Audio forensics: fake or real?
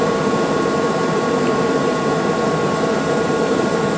fake